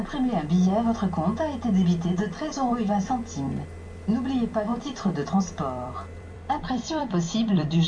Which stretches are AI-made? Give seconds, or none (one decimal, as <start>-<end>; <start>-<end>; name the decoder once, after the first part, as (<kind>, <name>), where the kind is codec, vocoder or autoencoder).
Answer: 4.7-7.9 (vocoder, BigVGAN v2)